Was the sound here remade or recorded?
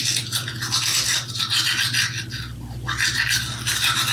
recorded